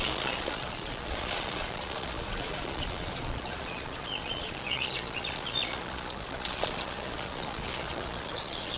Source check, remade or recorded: remade